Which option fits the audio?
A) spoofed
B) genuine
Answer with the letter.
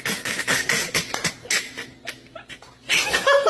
B